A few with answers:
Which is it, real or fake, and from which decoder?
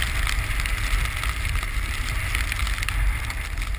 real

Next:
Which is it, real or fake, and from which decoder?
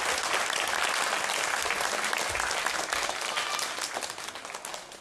real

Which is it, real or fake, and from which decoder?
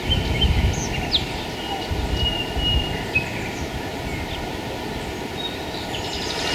real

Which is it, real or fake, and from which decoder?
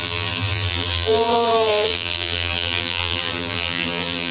fake, vocoder, BigVGAN v2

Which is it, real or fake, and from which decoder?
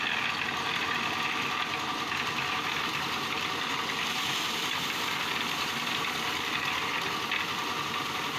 real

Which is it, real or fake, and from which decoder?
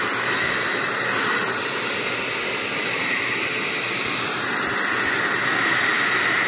real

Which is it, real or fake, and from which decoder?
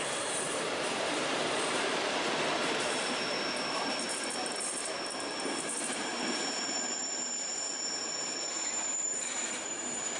fake, vocoder, BigVGAN v2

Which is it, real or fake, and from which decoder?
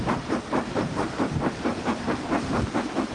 fake, vocoder, BigVGAN v2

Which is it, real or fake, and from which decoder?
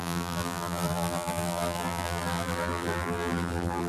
fake, vocoder, BigVGAN v2